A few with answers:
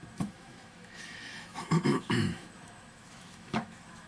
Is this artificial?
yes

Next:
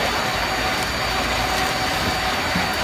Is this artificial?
no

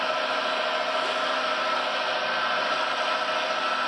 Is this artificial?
no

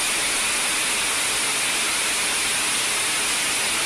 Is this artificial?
no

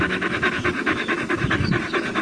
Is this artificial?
yes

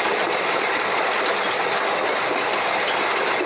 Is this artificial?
no